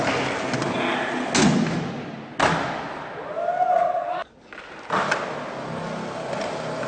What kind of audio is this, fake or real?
real